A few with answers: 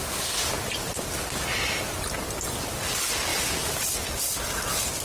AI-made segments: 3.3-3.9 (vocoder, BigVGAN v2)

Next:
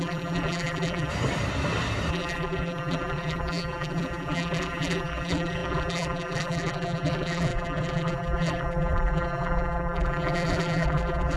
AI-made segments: 0.0-1.1 (vocoder, BigVGAN v2); 2.1-11.4

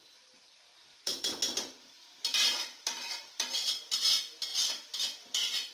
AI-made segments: 0.9-3.9 (vocoder, BigVGAN v2)

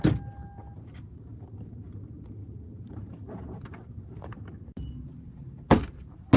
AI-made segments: 1.3-1.9 (vocoder, BigVGAN v2); 2.4-4.2

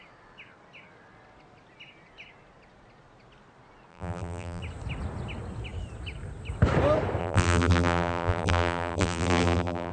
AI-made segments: 3.9-4.6 (vocoder, BigVGAN v2); 7.2-9.9